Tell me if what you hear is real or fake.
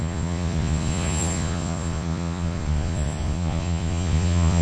fake